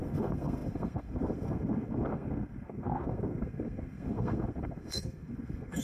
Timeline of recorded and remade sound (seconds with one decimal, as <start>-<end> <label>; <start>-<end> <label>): 0.0-5.8 remade